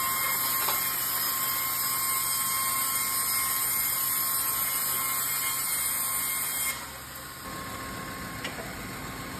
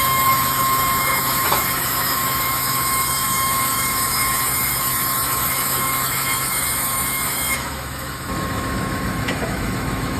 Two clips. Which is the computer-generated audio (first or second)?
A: second